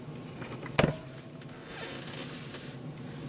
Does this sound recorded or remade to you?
recorded